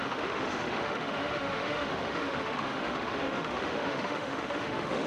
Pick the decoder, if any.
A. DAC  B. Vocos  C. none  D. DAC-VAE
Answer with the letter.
D